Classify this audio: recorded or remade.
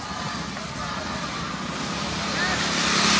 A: recorded